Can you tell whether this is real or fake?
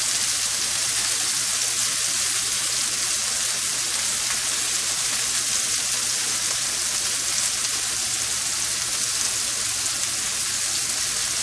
real